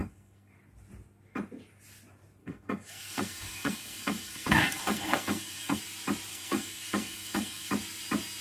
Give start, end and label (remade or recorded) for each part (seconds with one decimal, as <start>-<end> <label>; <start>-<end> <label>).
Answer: 0.0-0.5 remade; 0.5-2.4 recorded; 2.4-5.8 remade; 5.8-6.3 recorded; 6.3-7.7 remade; 7.7-8.4 recorded